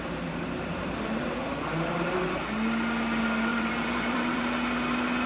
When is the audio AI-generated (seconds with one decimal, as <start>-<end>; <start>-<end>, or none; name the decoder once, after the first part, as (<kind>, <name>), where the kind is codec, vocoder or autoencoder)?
3.5-4.4 (vocoder, BigVGAN v2)